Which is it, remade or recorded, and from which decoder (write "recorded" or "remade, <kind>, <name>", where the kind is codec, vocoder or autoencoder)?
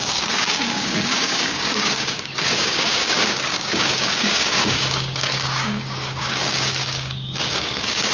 remade, codec, DAC